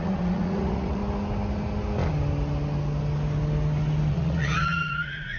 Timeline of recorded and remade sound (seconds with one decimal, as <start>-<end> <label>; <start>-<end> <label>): 0.0-1.0 remade; 1.0-4.1 recorded; 4.1-5.4 remade